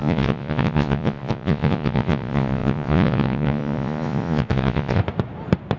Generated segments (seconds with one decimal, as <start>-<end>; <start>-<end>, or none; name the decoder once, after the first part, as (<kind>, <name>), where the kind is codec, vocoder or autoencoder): 0.0-5.0 (vocoder, Vocos)